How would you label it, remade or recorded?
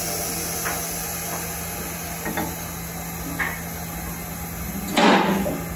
recorded